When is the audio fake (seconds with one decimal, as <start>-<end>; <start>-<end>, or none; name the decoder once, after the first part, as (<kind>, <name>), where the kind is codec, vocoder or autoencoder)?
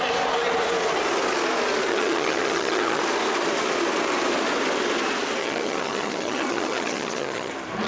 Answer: 1.9-3.0 (vocoder, HiFi-GAN); 5.4-7.5